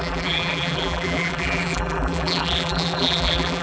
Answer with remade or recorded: remade